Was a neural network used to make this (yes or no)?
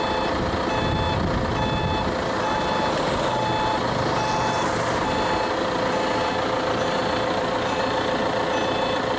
no